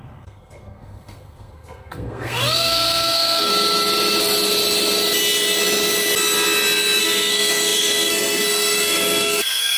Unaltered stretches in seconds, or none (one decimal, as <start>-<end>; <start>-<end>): 3.5-7.0